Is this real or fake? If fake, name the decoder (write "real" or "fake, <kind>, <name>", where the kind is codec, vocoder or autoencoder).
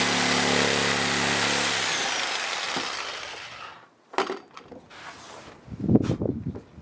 real